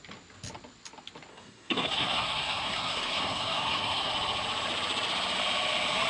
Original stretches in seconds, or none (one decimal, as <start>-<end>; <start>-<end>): 0.0-1.3; 4.1-6.1